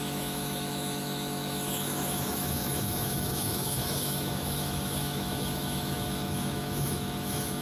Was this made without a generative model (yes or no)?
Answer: no